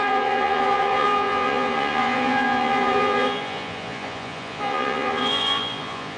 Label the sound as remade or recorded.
remade